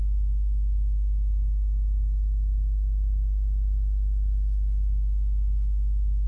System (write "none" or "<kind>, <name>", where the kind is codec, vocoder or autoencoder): none